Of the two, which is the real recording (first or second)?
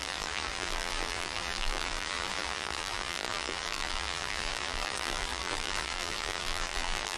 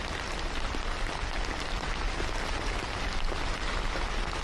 second